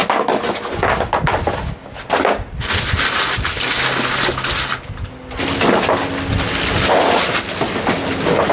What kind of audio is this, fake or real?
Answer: real